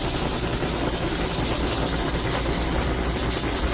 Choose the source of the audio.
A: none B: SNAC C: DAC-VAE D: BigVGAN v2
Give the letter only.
A